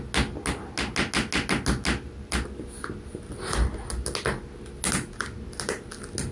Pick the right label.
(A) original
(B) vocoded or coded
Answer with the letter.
A